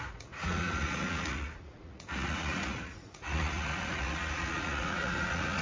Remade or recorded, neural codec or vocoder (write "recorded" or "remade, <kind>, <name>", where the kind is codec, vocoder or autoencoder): remade, vocoder, Vocos